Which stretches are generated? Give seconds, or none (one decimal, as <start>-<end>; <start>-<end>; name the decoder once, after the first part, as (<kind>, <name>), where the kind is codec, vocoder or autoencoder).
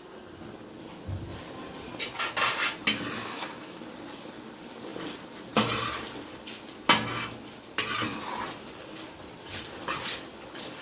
3.2-3.8 (autoencoder, DAC-VAE)